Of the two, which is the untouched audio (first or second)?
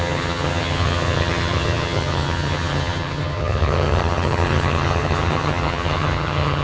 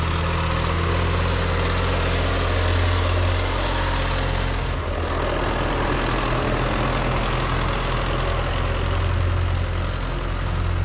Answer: second